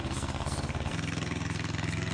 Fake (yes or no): yes